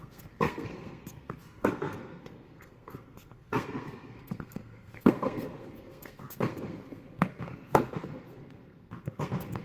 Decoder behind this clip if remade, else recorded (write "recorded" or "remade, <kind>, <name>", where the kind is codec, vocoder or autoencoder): remade, codec, SNAC